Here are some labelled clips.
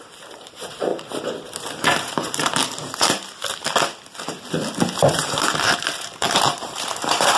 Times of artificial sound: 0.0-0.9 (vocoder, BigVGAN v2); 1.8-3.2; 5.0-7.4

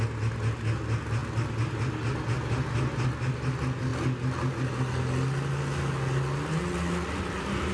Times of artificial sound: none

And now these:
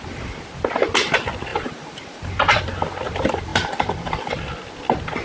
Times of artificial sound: 1.5-2.6 (vocoder, BigVGAN v2); 3.5-4.4

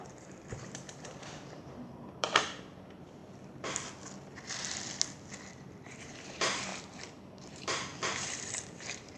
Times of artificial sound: 0.0-3.2 (vocoder, BigVGAN v2); 5.5-6.7; 7.5-9.2

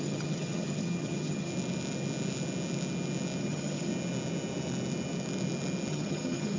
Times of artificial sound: 0.0-1.5 (vocoder, HiFi-GAN); 3.4-3.9; 5.9-6.6

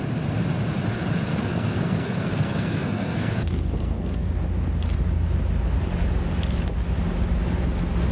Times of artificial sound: 1.3-4.3 (codec, SNAC)